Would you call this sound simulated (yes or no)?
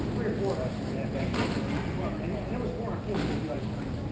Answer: no